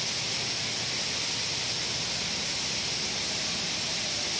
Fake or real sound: real